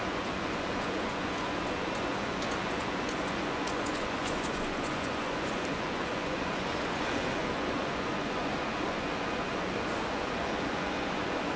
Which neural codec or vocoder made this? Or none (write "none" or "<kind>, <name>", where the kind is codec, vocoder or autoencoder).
vocoder, Vocos